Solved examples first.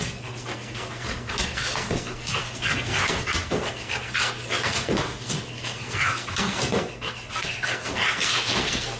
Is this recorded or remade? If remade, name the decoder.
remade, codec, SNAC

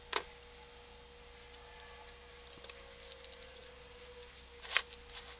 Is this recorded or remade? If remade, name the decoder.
recorded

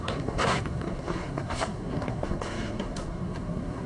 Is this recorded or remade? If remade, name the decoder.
remade, codec, SNAC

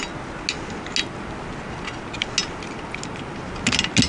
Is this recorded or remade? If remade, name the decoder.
recorded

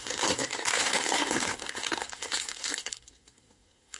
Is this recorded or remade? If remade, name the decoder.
remade, codec, SNAC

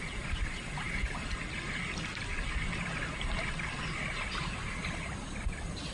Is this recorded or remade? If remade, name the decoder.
recorded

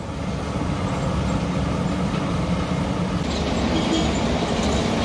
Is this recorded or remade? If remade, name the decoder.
recorded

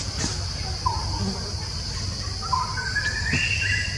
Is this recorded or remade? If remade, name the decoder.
recorded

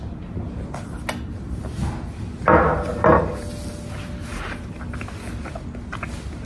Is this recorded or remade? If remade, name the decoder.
recorded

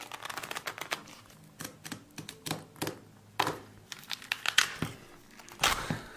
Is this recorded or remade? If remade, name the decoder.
recorded